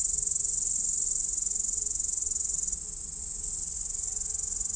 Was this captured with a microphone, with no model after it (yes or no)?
yes